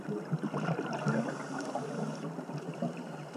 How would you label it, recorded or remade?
recorded